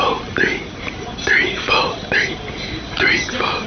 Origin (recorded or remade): recorded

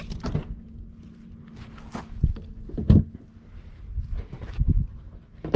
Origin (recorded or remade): recorded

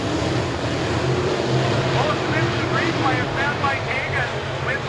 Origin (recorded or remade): recorded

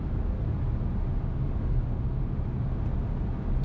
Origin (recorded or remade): recorded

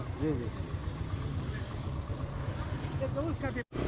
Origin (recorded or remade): recorded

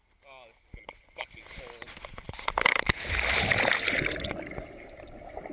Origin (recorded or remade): recorded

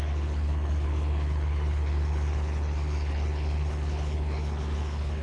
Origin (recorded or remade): remade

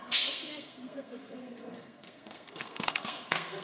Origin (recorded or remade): remade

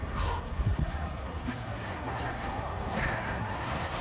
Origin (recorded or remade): remade